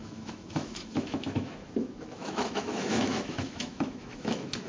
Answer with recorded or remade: remade